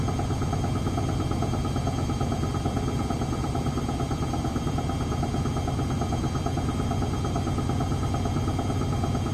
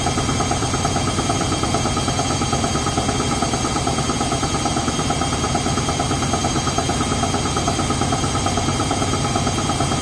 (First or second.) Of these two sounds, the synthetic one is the second